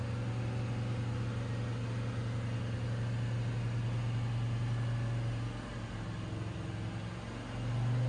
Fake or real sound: real